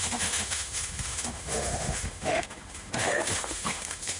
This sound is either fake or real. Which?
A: fake